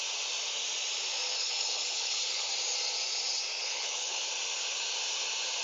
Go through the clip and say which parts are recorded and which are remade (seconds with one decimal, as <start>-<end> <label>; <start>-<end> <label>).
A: 0.0-1.3 recorded; 1.3-2.5 remade; 2.5-3.6 recorded; 3.6-4.3 remade; 4.3-5.6 recorded